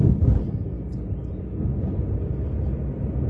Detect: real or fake real